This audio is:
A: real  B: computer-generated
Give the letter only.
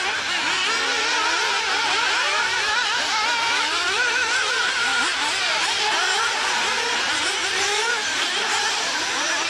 B